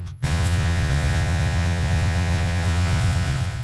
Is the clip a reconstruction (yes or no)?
yes